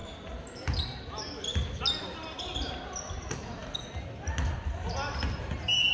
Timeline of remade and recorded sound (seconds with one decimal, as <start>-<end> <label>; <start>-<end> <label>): 0.0-5.9 recorded